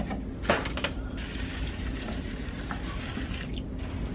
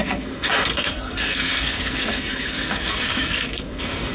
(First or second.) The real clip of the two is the first